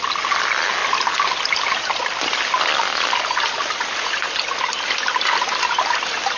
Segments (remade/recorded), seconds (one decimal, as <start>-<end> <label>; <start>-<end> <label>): 0.0-6.4 recorded